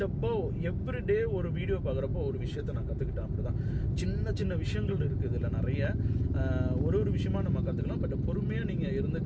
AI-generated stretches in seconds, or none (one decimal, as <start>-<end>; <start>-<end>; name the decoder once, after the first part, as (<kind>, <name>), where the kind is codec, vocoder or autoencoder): 2.1-3.9 (vocoder, BigVGAN v2)